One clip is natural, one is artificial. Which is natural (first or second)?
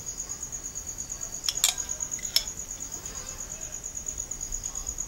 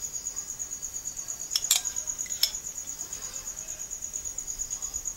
first